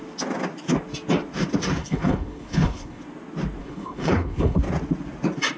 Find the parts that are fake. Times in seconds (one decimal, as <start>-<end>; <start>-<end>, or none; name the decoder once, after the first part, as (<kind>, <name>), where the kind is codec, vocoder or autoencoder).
1.8-3.0 (codec, HILCodec); 3.6-4.6